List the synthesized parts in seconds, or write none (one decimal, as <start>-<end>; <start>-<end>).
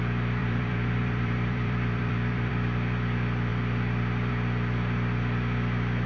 0.4-2.5